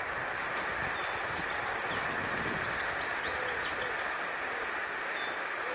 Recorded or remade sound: recorded